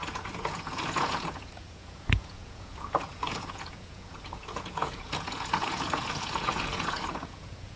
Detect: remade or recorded remade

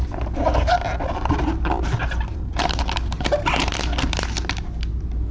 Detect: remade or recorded recorded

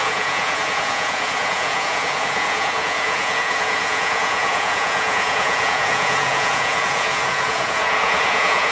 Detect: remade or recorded remade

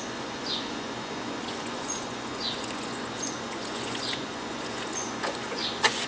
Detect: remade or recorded remade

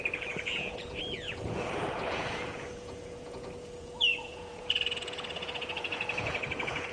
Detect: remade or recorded remade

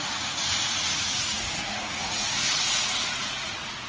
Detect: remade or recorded remade